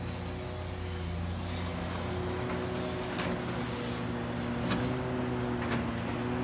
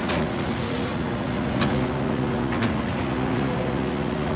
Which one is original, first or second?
first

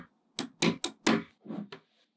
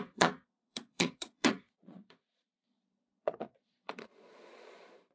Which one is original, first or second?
first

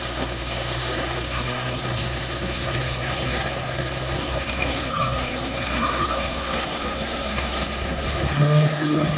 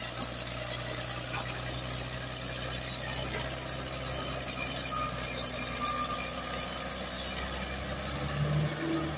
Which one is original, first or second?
second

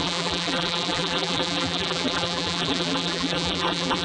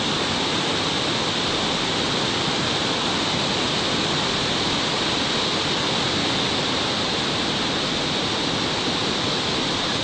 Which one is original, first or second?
second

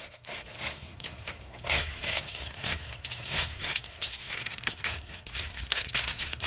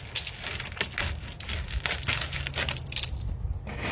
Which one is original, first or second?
second